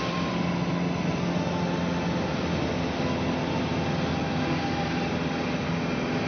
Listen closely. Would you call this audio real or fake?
real